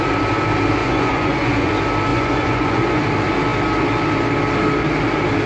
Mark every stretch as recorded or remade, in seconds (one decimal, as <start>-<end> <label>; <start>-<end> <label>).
0.0-0.8 recorded; 0.8-1.7 remade; 1.7-2.1 recorded; 2.1-3.0 remade; 3.0-5.5 recorded